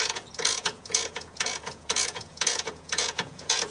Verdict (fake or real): fake